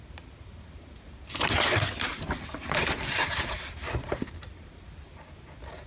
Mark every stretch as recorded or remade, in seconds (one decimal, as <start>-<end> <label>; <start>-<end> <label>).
0.0-2.1 recorded; 2.1-3.7 remade; 3.7-5.9 recorded